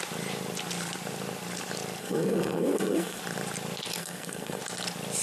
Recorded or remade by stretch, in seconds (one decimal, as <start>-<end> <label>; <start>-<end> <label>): 0.0-2.0 recorded; 2.0-3.2 remade; 3.2-4.0 recorded; 4.0-4.6 remade; 4.6-5.2 recorded